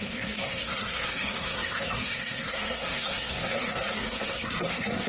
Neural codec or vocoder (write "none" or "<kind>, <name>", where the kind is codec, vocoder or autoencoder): codec, SNAC